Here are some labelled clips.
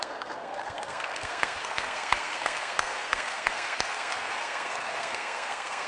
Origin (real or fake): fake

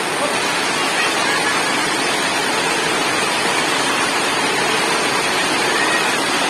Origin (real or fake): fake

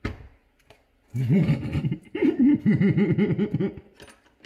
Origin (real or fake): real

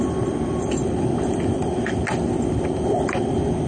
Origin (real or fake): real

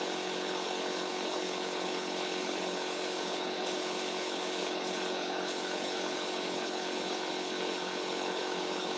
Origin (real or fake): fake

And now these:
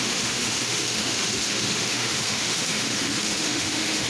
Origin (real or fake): fake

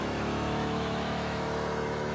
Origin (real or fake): fake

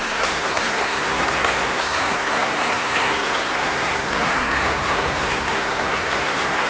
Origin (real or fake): fake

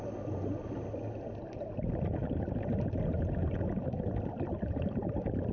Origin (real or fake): real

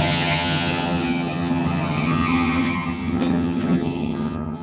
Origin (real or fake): fake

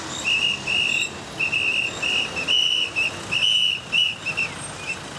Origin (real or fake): real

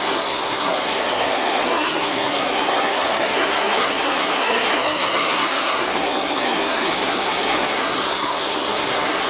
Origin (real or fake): fake